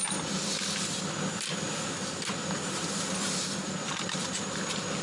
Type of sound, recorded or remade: recorded